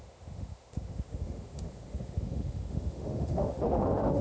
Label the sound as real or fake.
fake